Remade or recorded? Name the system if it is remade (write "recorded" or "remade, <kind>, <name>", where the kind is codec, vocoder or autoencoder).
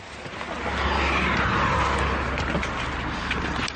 recorded